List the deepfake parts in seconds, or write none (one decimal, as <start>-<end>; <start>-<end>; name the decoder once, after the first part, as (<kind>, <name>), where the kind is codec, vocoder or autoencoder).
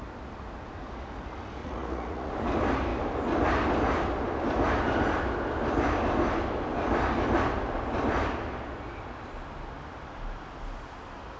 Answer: 1.6-2.3 (vocoder, Vocos)